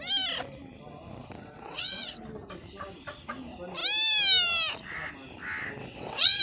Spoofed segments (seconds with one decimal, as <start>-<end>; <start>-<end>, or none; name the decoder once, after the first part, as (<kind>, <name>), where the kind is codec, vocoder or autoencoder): 1.2-2.2 (vocoder, WaveNeXt); 5.8-6.4